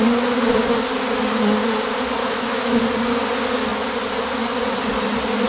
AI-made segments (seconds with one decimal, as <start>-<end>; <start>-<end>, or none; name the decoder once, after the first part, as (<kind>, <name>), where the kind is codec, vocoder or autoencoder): 2.2-2.8 (autoencoder, DAC-VAE)